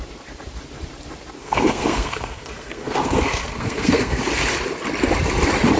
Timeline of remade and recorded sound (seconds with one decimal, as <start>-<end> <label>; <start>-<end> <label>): 0.0-1.4 recorded; 1.4-4.2 remade; 4.2-5.8 recorded